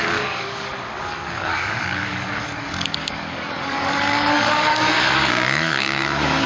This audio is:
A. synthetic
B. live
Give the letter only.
A